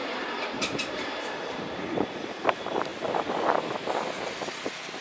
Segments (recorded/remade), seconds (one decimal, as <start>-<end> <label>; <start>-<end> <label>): 0.0-2.5 remade; 2.5-5.0 recorded